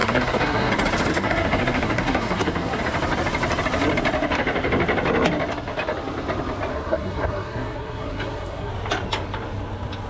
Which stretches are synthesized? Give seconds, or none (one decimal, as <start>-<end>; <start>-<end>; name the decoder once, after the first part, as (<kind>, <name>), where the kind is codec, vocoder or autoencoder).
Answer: 0.0-0.7 (codec, SNAC); 1.1-2.8; 6.7-8.7